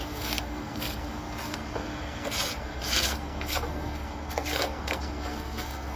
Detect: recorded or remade remade